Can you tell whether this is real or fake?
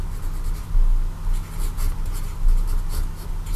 real